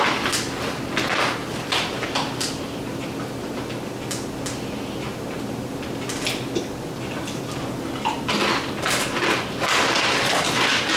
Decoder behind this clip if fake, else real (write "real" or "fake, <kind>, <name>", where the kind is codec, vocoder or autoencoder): real